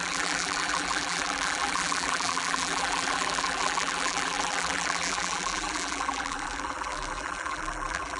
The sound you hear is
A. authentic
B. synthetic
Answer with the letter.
B